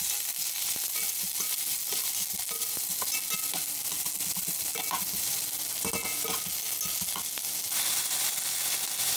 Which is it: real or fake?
real